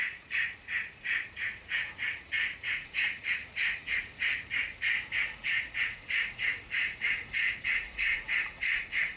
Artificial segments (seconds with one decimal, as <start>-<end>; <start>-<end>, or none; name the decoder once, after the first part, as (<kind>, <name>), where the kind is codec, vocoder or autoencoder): 0.0-9.2 (vocoder, Vocos)

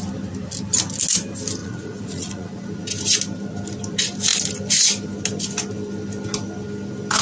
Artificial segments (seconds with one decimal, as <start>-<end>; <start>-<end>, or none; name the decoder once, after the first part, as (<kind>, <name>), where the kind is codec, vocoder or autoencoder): 1.6-2.7 (vocoder, Vocos)

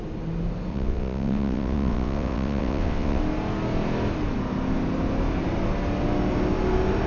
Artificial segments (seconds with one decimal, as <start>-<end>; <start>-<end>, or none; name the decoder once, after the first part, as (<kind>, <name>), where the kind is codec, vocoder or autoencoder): 0.7-3.2 (vocoder, WaveNeXt)

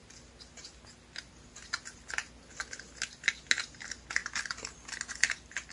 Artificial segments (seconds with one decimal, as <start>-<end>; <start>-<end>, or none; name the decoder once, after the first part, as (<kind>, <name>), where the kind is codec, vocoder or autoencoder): none

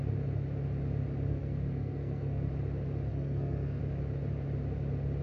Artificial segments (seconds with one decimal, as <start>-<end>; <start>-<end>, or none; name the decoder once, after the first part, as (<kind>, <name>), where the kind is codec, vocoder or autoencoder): 1.3-2.5 (codec, SNAC); 3.1-3.8

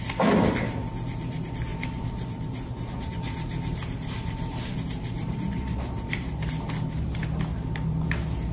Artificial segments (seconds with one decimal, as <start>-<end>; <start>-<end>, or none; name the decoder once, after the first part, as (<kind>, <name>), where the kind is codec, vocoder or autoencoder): 1.7-6.5 (vocoder, BigVGAN v2)

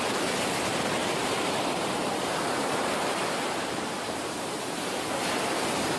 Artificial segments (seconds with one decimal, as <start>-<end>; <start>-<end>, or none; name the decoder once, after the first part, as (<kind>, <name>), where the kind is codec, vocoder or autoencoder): 1.0-4.6 (vocoder, BigVGAN v2)

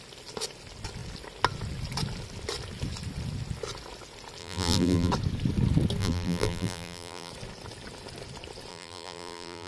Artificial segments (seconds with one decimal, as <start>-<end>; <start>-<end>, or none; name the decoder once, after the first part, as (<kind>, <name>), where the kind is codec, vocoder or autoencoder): 4.4-5.1 (vocoder, BigVGAN v2); 6.0-7.3; 8.7-9.7